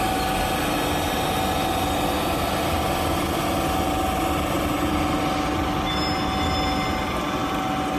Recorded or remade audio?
recorded